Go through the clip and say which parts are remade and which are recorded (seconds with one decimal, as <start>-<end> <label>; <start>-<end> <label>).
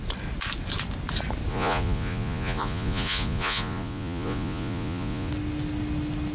0.0-1.5 recorded; 1.5-5.3 remade; 5.3-6.3 recorded